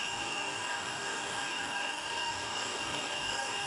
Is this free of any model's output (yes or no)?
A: no